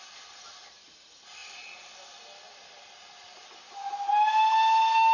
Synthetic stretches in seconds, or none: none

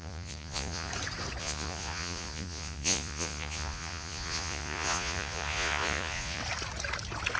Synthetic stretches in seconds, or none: 0.0-0.9 (vocoder, Vocos); 1.4-6.4

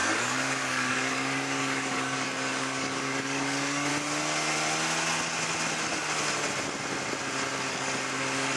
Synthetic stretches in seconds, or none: 0.0-3.9 (codec, DAC); 7.7-8.6

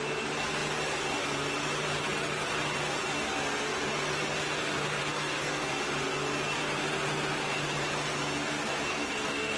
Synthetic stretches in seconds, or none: 5.1-5.7 (codec, SNAC); 8.9-9.6

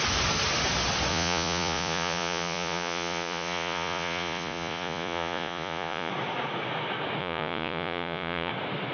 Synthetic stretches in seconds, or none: 1.1-6.1 (vocoder, Vocos); 7.2-8.5

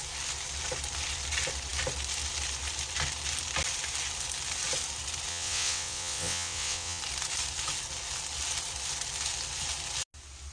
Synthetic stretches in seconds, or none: 5.3-7.0 (vocoder, WaveNeXt)